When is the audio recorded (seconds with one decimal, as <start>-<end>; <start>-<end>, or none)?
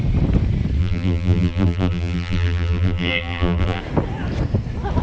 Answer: 0.0-0.8; 3.8-5.0